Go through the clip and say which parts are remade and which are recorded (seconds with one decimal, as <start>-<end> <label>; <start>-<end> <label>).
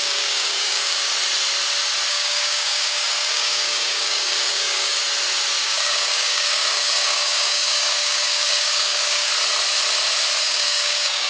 0.0-1.1 remade; 1.1-2.1 recorded; 2.1-5.0 remade; 5.0-5.6 recorded; 5.6-9.3 remade; 9.3-10.4 recorded; 10.4-11.3 remade